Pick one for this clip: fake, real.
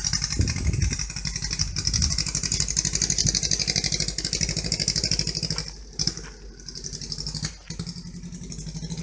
real